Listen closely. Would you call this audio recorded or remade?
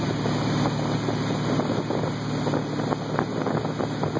recorded